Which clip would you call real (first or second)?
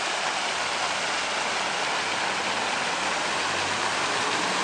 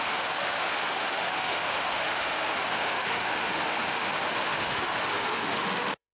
first